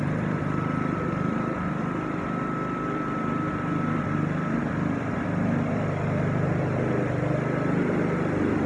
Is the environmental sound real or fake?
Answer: fake